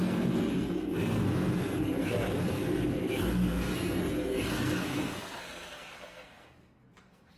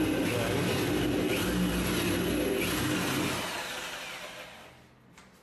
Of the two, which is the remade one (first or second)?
first